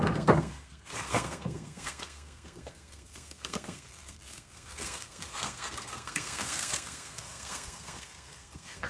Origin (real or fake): fake